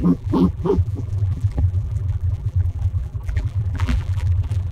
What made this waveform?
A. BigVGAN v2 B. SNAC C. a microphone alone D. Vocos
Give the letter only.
A